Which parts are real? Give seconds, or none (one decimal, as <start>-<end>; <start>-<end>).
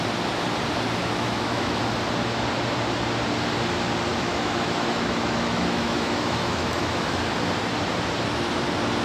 0.0-1.0; 1.8-4.1; 7.2-9.0